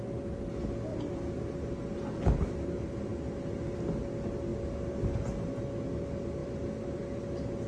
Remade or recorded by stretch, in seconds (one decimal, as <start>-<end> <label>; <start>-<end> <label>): 0.0-0.9 recorded; 0.9-1.4 remade; 1.4-6.4 recorded; 6.4-7.2 remade; 7.2-7.7 recorded